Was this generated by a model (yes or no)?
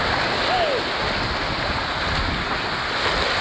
no